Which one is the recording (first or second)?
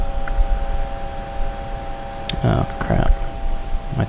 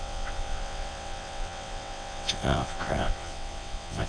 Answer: first